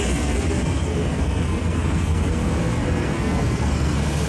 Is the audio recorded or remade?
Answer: remade